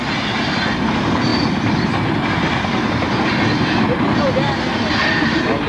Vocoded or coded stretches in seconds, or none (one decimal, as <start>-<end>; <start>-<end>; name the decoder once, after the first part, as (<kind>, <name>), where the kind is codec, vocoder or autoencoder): none